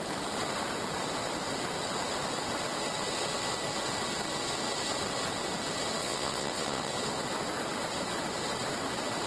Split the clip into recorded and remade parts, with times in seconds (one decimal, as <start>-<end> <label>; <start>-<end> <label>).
0.0-6.0 recorded; 6.0-6.9 remade; 6.9-9.3 recorded